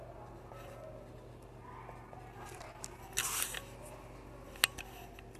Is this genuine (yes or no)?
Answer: yes